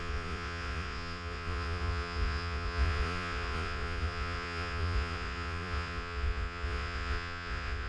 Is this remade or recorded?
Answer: remade